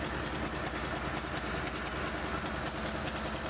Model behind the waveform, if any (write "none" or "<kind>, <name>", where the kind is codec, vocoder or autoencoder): none